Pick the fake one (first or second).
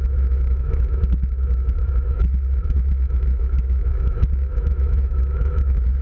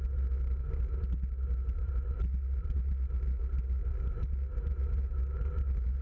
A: first